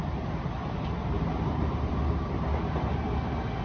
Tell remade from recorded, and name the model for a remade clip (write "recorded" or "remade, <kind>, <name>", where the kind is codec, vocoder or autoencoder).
recorded